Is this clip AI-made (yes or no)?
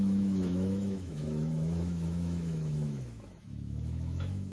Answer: yes